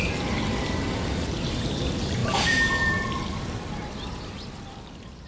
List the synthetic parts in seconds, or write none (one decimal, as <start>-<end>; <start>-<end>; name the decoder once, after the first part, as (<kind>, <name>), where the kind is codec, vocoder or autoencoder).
none